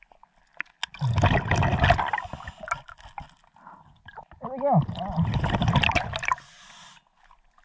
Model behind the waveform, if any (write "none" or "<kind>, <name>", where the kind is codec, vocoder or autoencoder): none